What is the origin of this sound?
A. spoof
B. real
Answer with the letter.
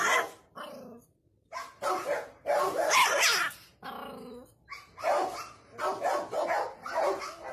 B